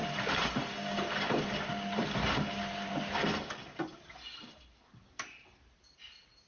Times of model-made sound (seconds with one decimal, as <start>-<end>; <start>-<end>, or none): none